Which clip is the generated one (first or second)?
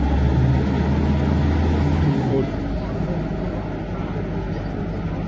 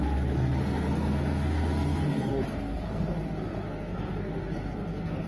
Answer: second